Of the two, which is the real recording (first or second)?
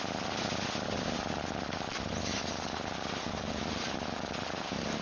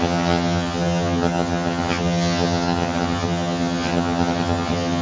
first